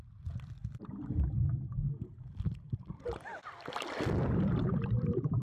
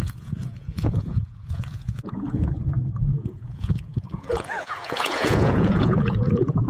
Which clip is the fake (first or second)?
second